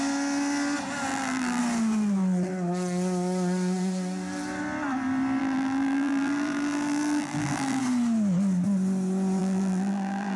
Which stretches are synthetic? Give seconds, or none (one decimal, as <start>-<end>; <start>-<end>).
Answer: 1.1-1.6; 5.4-7.8; 9.4-10.4